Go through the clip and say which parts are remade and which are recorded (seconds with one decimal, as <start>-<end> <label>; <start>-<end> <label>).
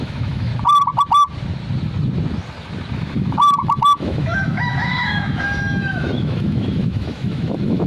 0.0-0.5 remade; 0.5-2.9 recorded; 2.9-7.9 remade